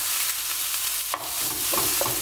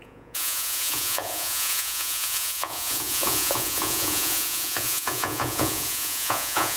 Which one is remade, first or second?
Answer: second